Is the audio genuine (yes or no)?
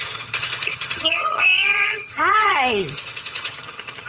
no